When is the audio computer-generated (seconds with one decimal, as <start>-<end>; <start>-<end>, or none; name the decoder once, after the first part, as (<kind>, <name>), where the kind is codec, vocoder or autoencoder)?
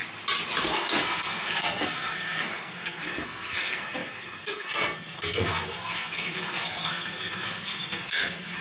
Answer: 0.6-8.6 (codec, SNAC)